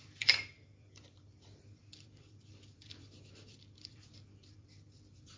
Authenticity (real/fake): fake